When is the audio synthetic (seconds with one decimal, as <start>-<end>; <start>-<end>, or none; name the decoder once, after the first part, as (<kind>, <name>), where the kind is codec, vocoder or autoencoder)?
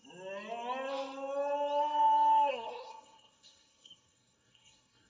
2.5-5.1 (codec, SNAC)